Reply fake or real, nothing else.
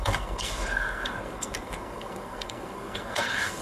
fake